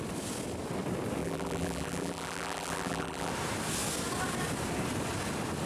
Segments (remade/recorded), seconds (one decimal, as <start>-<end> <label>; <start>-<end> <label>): 0.0-1.2 recorded; 1.2-3.3 remade; 3.3-5.7 recorded

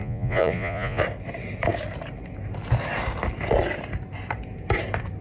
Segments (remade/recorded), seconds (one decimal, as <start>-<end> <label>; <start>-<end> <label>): 0.0-1.0 remade; 1.0-5.2 recorded

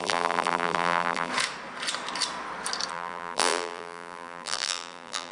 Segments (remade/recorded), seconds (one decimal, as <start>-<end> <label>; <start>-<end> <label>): 0.0-1.3 remade; 1.3-2.9 recorded; 2.9-5.3 remade

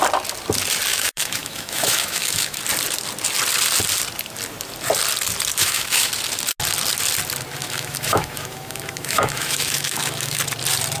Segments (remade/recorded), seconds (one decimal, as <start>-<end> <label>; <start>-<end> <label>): 0.0-0.9 recorded; 0.9-2.6 remade; 2.6-5.6 recorded; 5.6-6.1 remade; 6.1-7.6 recorded; 7.6-10.4 remade; 10.4-11.0 recorded

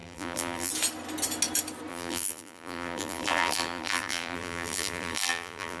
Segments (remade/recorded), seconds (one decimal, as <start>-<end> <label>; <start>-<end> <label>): 0.0-0.7 remade; 0.7-1.9 recorded; 1.9-5.8 remade

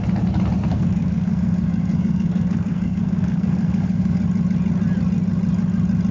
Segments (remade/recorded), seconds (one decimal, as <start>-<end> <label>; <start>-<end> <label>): 0.0-0.7 recorded; 0.7-4.2 remade; 4.2-6.1 recorded

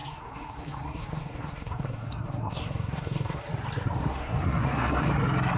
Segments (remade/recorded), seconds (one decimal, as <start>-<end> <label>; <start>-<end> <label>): 0.0-3.4 remade; 3.4-4.0 recorded; 4.0-5.1 remade; 5.1-5.6 recorded